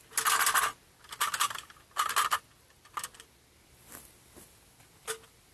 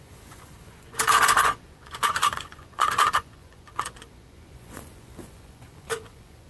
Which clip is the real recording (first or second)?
first